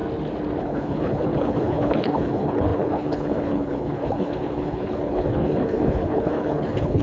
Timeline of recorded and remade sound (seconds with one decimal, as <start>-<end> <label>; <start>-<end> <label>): 0.0-0.6 recorded; 0.6-7.0 remade